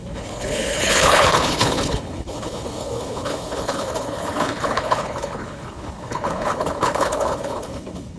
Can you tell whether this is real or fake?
fake